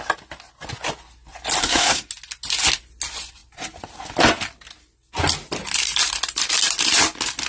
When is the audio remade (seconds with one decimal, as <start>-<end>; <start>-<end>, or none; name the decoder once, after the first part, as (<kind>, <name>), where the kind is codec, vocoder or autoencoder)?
1.6-2.1 (codec, SNAC)